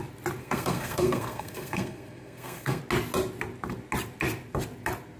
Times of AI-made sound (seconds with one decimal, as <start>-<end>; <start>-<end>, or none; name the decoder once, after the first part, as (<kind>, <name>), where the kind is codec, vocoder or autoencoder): 0.4-2.8 (codec, SNAC)